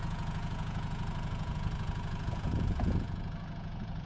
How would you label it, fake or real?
fake